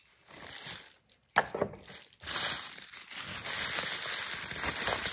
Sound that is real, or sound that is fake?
real